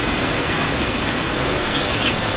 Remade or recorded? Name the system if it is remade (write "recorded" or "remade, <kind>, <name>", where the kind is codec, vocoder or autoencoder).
remade, codec, SNAC